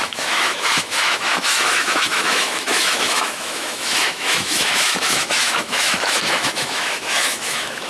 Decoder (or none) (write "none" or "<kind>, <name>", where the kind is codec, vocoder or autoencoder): autoencoder, DAC-VAE